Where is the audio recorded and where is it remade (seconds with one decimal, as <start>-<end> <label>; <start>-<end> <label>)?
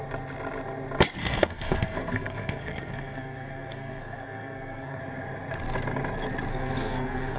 0.0-1.2 recorded; 1.2-5.0 remade; 5.0-6.5 recorded; 6.5-7.4 remade